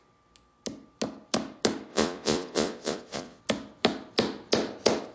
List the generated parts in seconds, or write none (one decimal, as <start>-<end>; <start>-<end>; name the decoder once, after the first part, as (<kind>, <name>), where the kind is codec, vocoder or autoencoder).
1.9-3.4 (vocoder, Vocos)

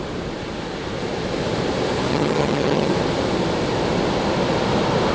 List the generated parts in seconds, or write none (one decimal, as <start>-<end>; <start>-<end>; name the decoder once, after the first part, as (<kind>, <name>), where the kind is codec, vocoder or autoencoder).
2.1-2.9 (vocoder, HiFi-GAN)

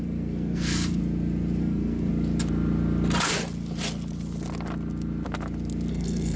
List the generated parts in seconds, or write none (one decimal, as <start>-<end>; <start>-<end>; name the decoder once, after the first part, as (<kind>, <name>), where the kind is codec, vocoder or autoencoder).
0.0-1.0 (codec, SNAC); 1.6-2.1; 5.9-6.4

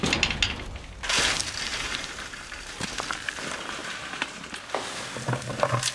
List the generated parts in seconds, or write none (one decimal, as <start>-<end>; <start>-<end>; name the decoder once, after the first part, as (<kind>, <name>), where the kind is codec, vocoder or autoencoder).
1.7-3.1 (vocoder, BigVGAN v2); 3.8-4.6

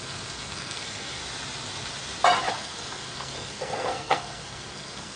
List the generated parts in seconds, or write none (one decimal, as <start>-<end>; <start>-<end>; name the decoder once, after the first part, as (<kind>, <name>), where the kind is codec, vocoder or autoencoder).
0.0-1.2 (codec, SNAC); 2.5-5.2